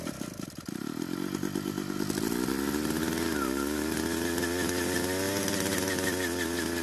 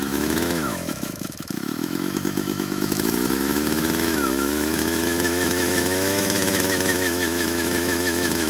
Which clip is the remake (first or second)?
second